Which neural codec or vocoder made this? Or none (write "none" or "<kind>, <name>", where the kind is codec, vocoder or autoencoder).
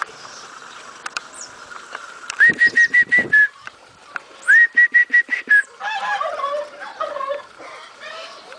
vocoder, BigVGAN v2